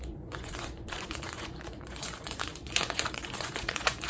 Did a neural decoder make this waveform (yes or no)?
yes